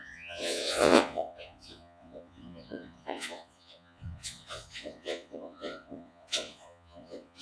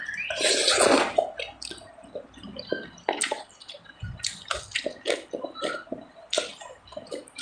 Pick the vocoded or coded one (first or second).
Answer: first